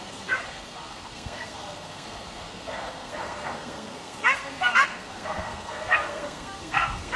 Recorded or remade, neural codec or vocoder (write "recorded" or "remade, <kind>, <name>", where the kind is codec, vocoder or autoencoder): remade, codec, SNAC